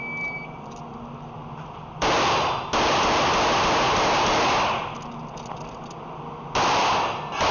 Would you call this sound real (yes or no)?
yes